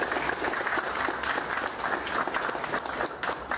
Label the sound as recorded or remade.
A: recorded